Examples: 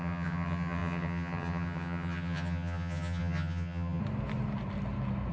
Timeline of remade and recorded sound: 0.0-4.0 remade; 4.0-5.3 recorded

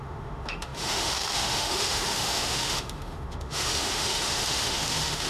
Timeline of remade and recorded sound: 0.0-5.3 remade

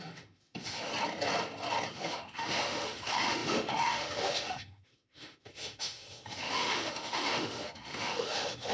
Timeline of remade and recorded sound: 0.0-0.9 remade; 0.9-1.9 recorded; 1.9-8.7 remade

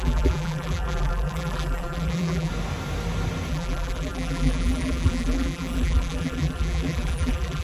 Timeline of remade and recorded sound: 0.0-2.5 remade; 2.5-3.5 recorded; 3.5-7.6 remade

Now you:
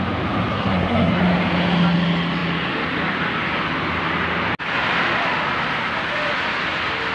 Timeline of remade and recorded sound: 0.0-0.5 recorded; 0.5-1.2 remade; 1.2-7.1 recorded

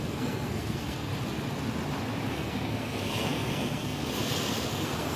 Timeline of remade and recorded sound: 0.0-1.1 remade; 1.1-2.3 recorded; 2.3-5.2 remade

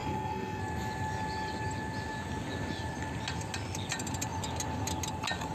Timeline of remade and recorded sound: 0.0-0.6 remade; 0.6-5.5 recorded